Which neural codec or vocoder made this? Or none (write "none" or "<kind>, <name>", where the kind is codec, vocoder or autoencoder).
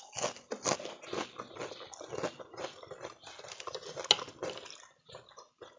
none